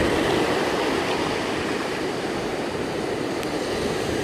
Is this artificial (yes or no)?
no